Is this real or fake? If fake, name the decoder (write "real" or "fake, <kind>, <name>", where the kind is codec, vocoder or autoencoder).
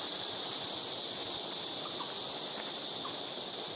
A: real